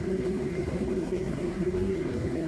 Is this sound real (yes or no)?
no